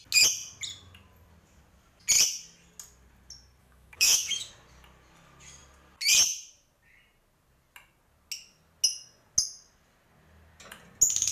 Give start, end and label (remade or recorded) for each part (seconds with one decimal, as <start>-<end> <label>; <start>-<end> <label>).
0.0-3.6 recorded; 3.6-4.5 remade; 4.5-11.3 recorded